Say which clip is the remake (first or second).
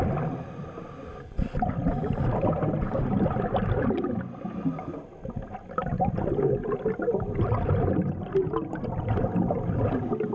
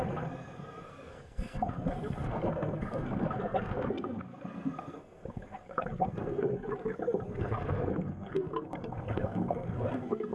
second